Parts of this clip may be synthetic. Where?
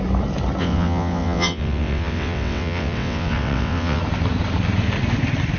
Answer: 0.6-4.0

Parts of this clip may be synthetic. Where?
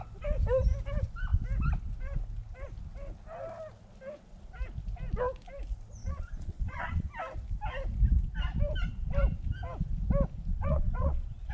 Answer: 6.0-7.1; 10.5-11.5